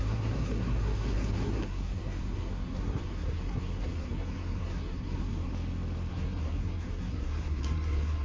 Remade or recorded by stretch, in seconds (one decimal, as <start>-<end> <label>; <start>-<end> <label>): 0.0-5.5 remade; 5.5-6.1 recorded; 6.1-8.2 remade